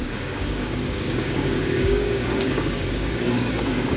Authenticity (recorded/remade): remade